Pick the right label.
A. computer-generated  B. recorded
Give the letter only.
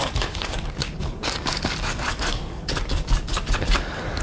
A